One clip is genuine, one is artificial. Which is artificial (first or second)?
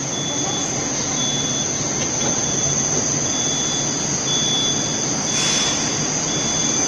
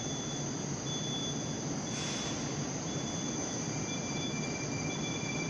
second